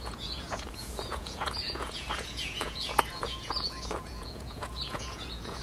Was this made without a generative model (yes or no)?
no